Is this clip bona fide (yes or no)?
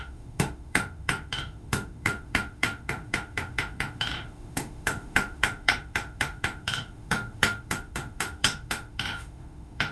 no